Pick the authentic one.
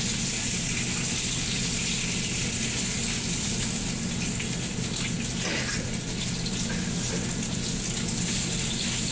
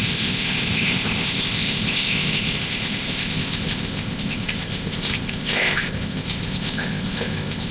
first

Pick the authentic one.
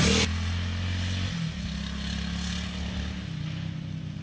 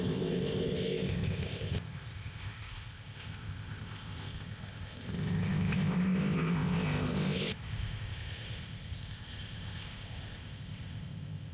first